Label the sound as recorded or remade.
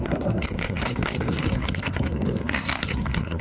remade